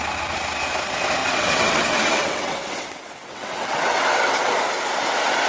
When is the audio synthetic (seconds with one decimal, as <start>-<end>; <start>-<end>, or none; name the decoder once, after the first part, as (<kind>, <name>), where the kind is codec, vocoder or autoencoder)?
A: 1.2-4.5 (vocoder, WaveNeXt)